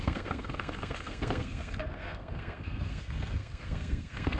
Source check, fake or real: fake